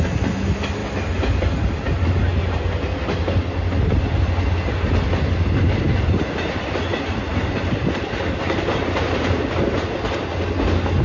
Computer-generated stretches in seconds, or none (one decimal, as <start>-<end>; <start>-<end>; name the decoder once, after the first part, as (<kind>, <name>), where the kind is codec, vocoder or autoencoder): 7.3-9.6 (vocoder, BigVGAN v2)